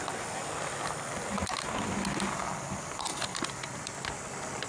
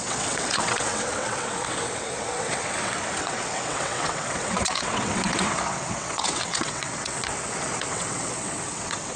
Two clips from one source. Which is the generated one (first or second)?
second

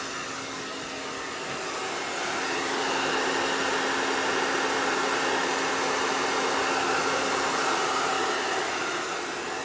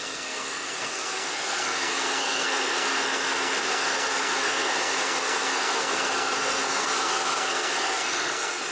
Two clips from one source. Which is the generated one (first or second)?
second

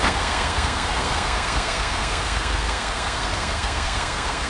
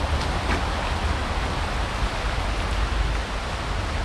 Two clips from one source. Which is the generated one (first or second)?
first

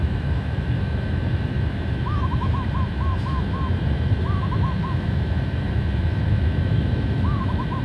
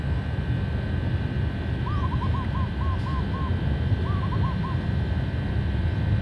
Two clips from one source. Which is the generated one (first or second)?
first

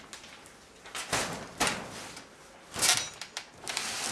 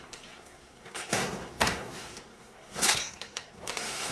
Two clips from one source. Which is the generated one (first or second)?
second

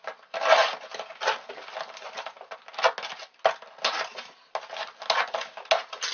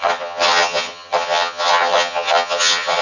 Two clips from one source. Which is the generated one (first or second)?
second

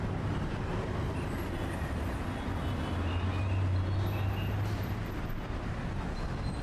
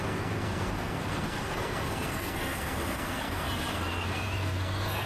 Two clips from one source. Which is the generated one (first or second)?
second